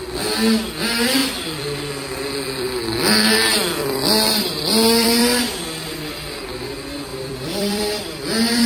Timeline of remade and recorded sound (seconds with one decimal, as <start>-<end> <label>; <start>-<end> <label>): 0.0-1.2 recorded; 1.2-5.6 remade; 5.6-7.1 recorded; 7.1-8.7 remade